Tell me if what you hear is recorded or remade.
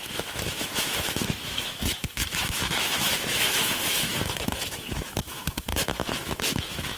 remade